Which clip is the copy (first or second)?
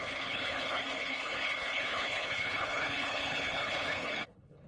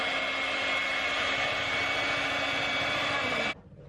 first